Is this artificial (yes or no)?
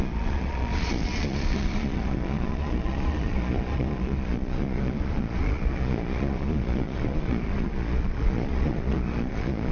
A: yes